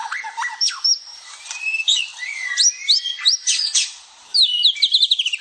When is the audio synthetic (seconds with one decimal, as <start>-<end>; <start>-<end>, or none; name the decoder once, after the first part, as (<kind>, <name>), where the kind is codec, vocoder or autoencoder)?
0.0-1.0 (vocoder, BigVGAN v2)